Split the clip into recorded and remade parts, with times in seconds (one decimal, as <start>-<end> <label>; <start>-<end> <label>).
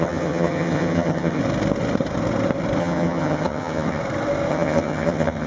0.0-1.4 remade; 1.4-2.8 recorded; 2.8-4.0 remade; 4.0-4.5 recorded; 4.5-5.5 remade